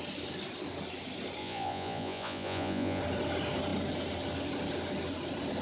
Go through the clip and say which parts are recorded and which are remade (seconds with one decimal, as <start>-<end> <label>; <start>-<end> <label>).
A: 0.0-1.4 recorded; 1.4-3.0 remade; 3.0-5.6 recorded